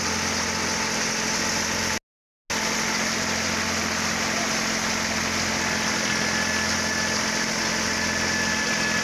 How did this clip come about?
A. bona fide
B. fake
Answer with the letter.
A